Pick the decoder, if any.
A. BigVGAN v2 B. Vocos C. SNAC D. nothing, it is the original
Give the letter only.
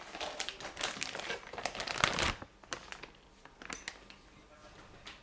D